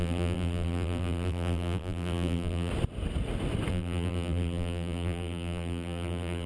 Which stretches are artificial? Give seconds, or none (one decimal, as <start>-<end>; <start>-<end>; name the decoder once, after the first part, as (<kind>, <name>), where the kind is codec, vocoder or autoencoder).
0.0-2.7 (vocoder, BigVGAN v2); 3.7-6.5